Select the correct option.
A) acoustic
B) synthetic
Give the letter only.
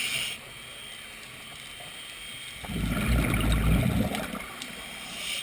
A